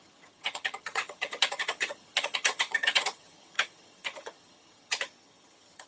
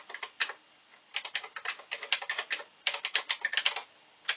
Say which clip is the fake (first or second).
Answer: first